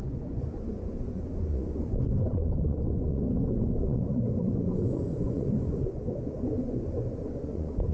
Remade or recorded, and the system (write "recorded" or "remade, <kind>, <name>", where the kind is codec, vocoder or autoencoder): remade, vocoder, Vocos